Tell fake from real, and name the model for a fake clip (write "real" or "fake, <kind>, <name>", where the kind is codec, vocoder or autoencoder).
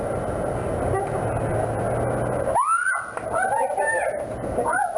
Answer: real